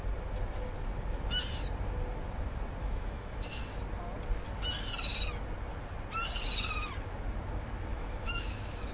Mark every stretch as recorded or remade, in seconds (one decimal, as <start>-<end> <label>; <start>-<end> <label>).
0.0-2.8 recorded; 2.8-3.6 remade; 3.6-7.9 recorded; 7.9-8.9 remade